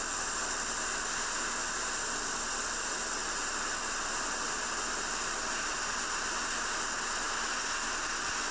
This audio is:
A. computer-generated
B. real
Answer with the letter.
B